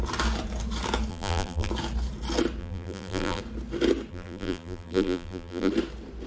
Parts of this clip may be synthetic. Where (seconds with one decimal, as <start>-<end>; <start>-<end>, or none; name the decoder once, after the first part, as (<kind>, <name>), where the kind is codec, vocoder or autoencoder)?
1.1-1.7 (vocoder, BigVGAN v2); 2.6-3.4; 4.1-5.7

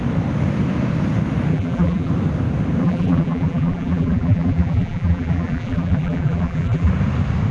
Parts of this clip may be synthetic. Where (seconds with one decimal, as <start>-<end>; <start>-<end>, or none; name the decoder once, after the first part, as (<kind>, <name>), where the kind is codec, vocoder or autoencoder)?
1.5-2.1 (vocoder, BigVGAN v2); 2.8-6.9

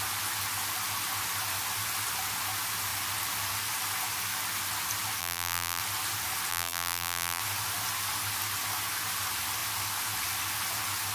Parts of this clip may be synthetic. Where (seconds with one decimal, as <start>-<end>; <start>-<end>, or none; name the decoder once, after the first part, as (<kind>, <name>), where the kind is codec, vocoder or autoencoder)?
5.2-5.8 (vocoder, BigVGAN v2); 6.5-7.4

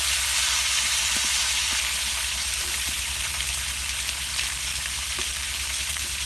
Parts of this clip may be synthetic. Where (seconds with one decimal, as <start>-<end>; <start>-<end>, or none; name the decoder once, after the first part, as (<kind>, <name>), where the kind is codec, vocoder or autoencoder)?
2.4-3.3 (vocoder, BigVGAN v2); 4.7-6.3

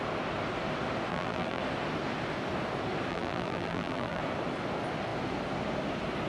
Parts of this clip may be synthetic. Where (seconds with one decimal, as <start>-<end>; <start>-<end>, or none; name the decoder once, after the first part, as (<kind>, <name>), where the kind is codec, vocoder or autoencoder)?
1.1-1.6 (vocoder, BigVGAN v2); 3.1-4.2

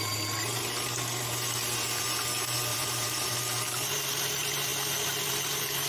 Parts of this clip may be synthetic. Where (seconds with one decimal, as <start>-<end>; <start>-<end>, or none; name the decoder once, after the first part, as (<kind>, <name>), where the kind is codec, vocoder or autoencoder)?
2.7-3.6 (vocoder, BigVGAN v2)

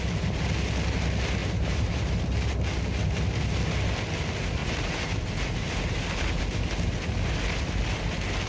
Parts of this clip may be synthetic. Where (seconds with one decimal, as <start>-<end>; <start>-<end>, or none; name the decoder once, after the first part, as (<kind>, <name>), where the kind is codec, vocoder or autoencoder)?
1.4-2.1 (vocoder, BigVGAN v2); 4.6-6.4

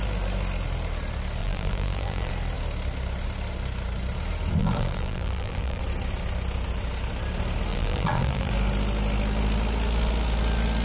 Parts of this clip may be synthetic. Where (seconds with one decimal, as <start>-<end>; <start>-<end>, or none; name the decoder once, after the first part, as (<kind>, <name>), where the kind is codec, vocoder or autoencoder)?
1.4-2.3 (vocoder, BigVGAN v2); 4.6-5.8; 7.7-8.5